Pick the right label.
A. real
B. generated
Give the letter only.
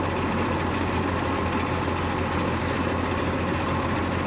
A